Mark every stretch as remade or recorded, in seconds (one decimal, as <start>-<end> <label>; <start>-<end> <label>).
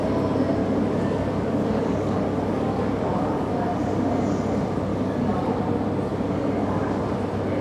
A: 0.0-0.6 recorded; 0.6-4.1 remade; 4.1-4.9 recorded; 4.9-5.6 remade; 5.6-6.1 recorded; 6.1-7.0 remade; 7.0-7.6 recorded